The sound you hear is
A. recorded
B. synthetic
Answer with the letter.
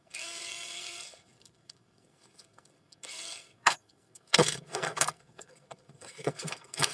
B